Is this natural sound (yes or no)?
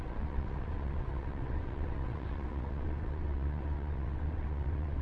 no